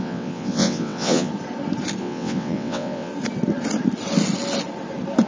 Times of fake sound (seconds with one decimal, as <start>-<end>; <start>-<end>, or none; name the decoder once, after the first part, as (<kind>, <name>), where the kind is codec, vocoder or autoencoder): 0.0-1.3 (vocoder, WaveNeXt); 2.0-3.1